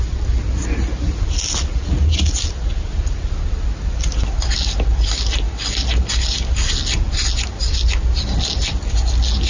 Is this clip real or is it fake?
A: real